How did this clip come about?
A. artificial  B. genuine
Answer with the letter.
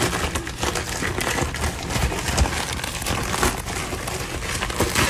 B